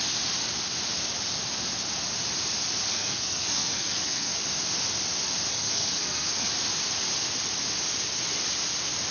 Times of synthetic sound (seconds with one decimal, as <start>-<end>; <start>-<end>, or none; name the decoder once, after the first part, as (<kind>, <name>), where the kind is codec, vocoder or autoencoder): 2.9-4.4 (codec, SNAC); 5.5-6.5